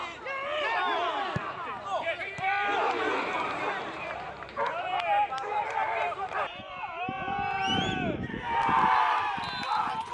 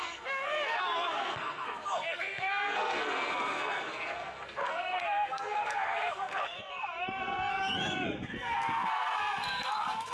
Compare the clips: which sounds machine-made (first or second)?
second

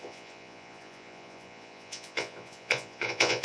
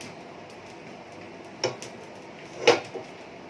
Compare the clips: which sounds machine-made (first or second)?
first